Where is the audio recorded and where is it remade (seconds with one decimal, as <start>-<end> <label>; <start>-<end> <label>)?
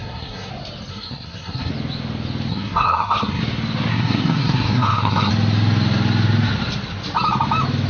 0.0-0.5 remade; 0.5-0.9 recorded; 0.9-1.7 remade; 1.7-2.5 recorded; 2.5-3.4 remade; 3.4-3.9 recorded; 3.9-5.3 remade; 5.3-7.9 recorded